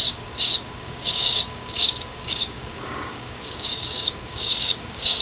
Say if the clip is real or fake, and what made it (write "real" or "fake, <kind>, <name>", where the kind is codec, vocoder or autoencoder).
fake, codec, DAC